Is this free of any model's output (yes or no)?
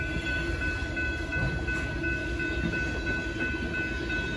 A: yes